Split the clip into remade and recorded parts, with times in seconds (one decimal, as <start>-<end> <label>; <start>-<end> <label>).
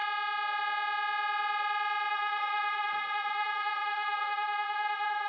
0.0-2.1 recorded; 2.1-5.3 remade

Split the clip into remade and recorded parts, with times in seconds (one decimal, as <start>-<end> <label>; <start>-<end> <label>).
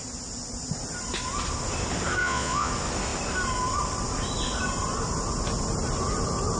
0.0-2.2 recorded; 2.2-2.7 remade; 2.7-6.6 recorded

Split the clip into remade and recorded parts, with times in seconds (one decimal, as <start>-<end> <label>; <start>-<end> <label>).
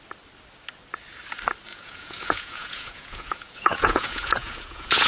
0.0-1.7 recorded; 1.7-5.1 remade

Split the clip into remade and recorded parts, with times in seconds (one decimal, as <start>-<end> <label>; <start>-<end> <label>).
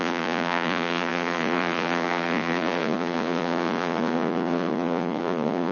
0.0-5.7 remade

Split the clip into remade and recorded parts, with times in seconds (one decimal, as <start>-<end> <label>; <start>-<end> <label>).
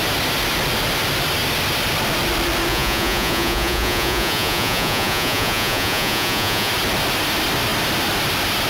0.0-2.7 recorded; 2.7-6.7 remade; 6.7-8.7 recorded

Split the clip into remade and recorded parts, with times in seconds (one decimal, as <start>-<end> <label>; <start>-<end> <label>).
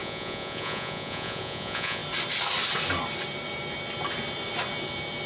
0.0-2.0 remade; 2.0-5.3 recorded